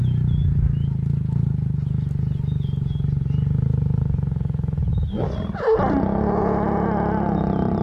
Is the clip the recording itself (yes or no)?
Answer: yes